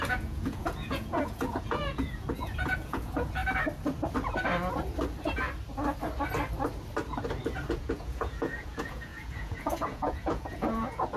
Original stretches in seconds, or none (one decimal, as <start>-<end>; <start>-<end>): 3.4-7.7